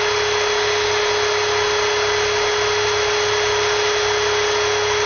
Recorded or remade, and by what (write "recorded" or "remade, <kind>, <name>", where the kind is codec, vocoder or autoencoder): recorded